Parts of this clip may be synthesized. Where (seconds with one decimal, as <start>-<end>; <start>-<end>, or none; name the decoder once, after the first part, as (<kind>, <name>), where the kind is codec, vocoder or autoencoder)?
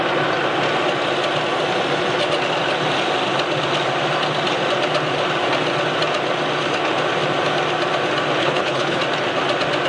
8.4-9.0 (codec, HILCodec)